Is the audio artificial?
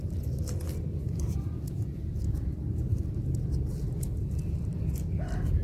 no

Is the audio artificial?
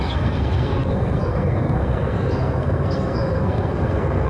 yes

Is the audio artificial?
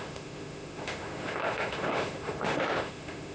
yes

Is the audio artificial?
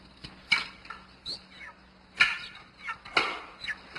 no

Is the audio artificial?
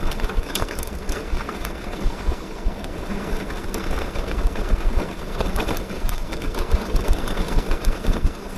yes